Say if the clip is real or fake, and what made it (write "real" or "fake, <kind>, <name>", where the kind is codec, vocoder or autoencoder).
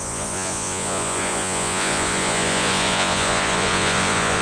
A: fake, vocoder, Vocos